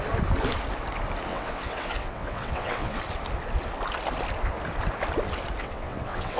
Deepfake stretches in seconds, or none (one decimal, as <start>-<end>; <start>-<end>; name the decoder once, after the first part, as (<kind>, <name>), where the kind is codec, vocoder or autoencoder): 1.3-3.0 (vocoder, WaveNeXt); 5.6-6.4